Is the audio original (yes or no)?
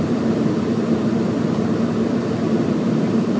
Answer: no